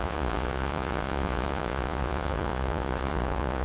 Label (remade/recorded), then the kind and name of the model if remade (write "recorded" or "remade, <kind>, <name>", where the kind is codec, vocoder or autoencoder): remade, vocoder, Vocos